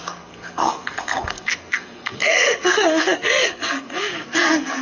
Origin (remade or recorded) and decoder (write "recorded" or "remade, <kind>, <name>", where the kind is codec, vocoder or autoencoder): remade, codec, SNAC